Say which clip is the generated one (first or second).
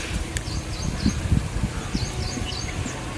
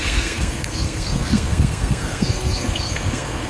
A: second